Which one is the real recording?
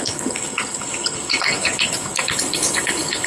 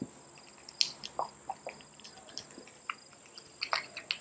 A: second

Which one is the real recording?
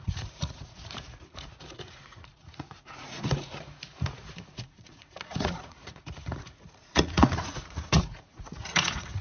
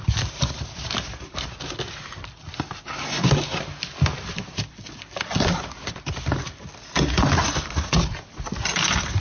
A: second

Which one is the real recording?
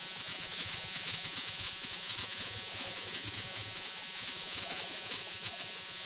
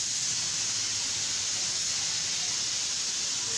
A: second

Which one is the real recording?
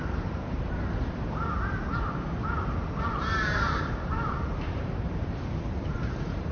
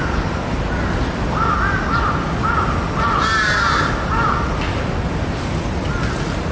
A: second